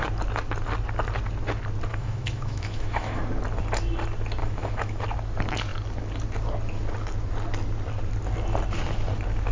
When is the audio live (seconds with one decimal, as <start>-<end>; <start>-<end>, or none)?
0.0-1.9; 3.2-4.4; 5.0-9.5

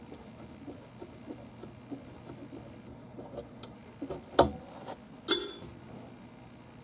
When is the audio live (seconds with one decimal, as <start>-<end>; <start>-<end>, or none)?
0.0-6.8

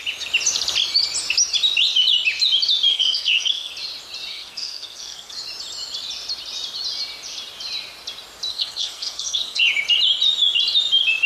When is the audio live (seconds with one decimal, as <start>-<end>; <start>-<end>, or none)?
0.0-2.9; 3.7-4.3; 5.3-8.5; 9.6-11.3

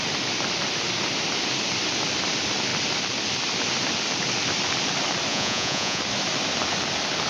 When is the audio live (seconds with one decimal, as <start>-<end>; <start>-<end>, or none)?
0.0-5.3; 6.0-7.3

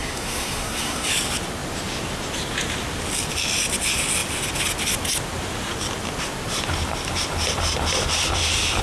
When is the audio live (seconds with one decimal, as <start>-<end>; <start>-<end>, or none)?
1.1-8.8

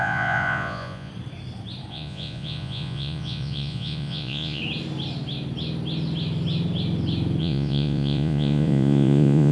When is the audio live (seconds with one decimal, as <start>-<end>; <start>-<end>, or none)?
1.1-1.9; 4.6-7.4

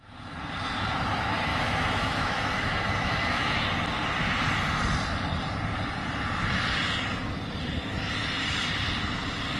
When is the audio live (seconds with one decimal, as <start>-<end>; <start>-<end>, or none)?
0.0-1.5; 3.6-9.6

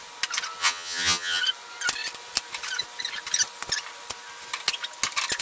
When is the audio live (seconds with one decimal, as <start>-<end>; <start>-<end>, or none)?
0.0-0.6; 1.4-5.4